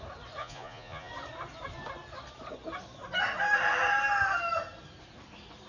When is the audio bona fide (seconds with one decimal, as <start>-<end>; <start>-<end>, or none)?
0.0-0.4; 1.1-5.7